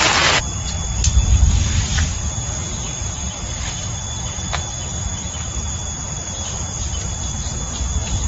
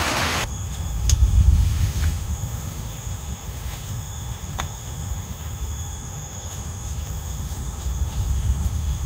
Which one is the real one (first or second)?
first